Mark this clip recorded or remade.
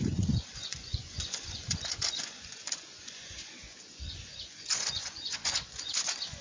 remade